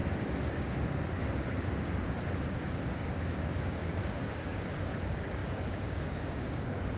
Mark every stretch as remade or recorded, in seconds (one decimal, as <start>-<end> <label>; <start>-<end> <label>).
0.0-7.0 remade